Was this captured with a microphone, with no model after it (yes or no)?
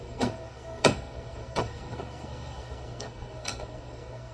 no